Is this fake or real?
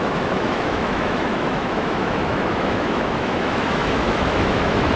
fake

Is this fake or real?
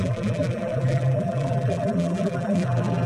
fake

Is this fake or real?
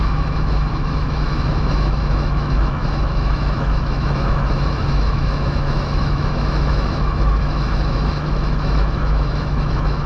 fake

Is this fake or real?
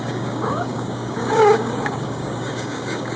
fake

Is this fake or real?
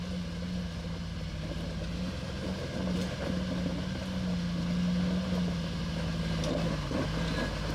real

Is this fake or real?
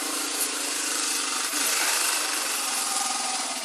fake